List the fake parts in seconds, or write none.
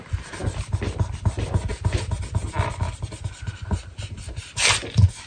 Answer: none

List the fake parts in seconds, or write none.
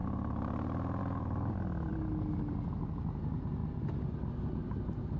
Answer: none